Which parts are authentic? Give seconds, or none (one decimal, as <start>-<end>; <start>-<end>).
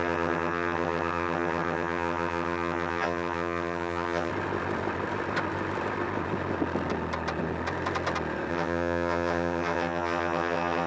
4.3-8.5